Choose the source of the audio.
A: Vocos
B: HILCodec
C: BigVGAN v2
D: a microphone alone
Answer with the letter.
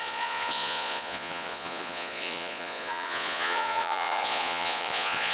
A